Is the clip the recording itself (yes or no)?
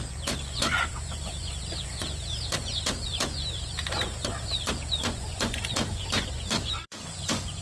no